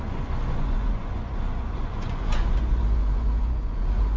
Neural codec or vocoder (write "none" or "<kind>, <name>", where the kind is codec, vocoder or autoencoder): vocoder, Vocos